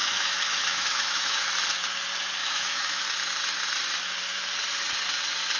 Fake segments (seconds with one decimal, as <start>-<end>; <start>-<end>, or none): 0.0-1.5; 2.4-3.0